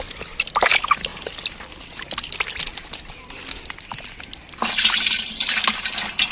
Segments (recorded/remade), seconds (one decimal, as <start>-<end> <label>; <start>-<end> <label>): 0.0-6.3 recorded